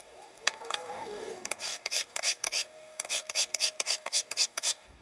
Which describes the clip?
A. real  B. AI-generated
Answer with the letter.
B